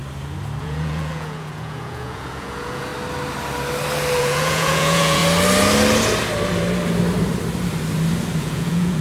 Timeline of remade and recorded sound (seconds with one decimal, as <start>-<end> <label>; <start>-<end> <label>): 0.0-0.6 recorded; 0.6-2.9 remade; 2.9-4.2 recorded; 4.2-5.2 remade; 5.2-8.4 recorded; 8.4-9.0 remade